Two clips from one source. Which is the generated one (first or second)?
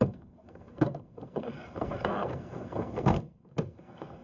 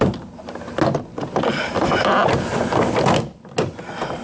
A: first